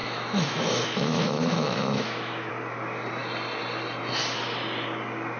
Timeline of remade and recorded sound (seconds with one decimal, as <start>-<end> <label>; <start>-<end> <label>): 0.0-2.5 remade; 2.5-5.4 recorded